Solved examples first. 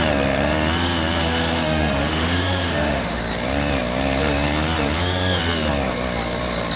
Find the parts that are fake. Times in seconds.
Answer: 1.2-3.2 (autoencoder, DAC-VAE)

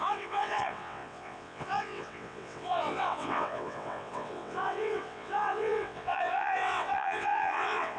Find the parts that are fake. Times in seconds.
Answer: 0.0-8.0 (vocoder, WaveNeXt)